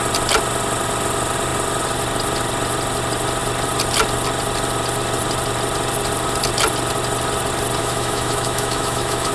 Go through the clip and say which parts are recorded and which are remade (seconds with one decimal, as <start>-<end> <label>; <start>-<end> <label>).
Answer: 0.0-7.8 recorded; 7.8-9.3 remade